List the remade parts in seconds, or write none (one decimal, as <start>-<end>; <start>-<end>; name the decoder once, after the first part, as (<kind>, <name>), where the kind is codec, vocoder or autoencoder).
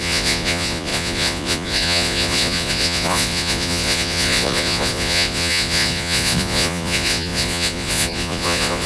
0.0-8.9 (vocoder, Vocos)